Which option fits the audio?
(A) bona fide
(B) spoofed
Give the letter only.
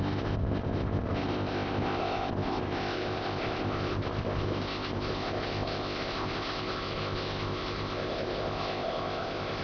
B